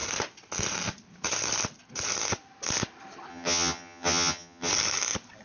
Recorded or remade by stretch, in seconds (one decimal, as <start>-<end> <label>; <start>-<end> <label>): 0.0-3.3 recorded; 3.3-4.7 remade; 4.7-5.4 recorded

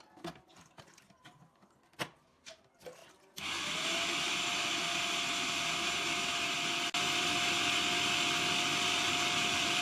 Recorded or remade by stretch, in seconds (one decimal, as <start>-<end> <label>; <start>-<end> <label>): 0.0-8.7 recorded; 8.7-9.8 remade

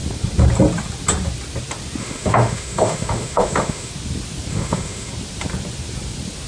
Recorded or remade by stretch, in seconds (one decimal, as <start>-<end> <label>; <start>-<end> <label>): 0.0-2.0 recorded; 2.0-3.9 remade; 3.9-4.5 recorded; 4.5-5.1 remade; 5.1-6.5 recorded

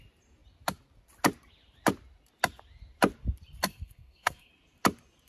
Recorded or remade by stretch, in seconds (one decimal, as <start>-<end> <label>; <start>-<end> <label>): 0.0-3.7 recorded; 3.7-4.5 remade; 4.5-5.3 recorded